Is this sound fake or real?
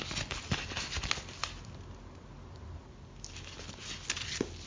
real